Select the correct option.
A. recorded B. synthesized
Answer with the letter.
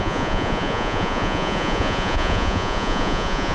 B